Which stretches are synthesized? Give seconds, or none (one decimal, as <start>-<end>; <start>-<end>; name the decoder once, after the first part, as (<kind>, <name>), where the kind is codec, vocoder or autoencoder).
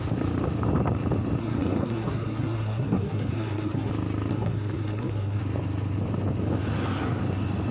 1.4-3.9 (codec, SNAC); 4.3-5.4